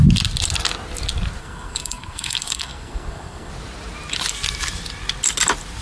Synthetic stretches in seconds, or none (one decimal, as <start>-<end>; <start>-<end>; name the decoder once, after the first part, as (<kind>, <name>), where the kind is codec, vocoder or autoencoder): 1.4-3.5 (codec, SNAC)